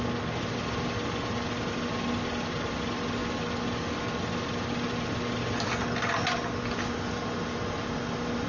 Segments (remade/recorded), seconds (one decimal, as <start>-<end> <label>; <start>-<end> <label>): 0.0-8.5 recorded